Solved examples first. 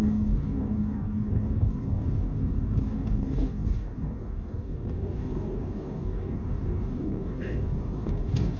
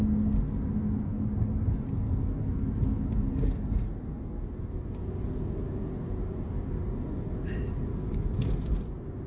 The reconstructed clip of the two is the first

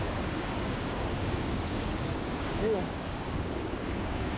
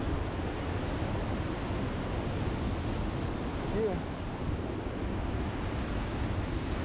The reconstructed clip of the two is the first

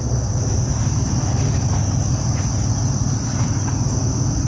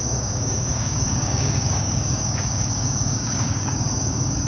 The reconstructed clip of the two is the second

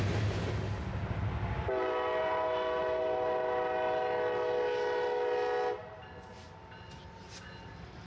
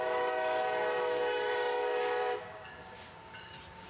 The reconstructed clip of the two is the second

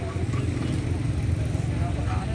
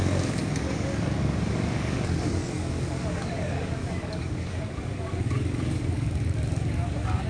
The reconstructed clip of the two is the second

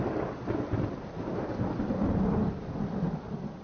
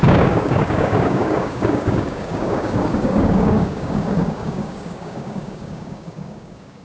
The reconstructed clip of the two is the second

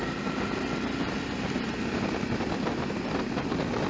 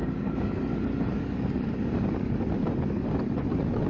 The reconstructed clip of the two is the second